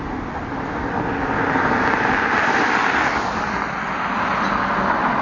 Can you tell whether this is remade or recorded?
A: recorded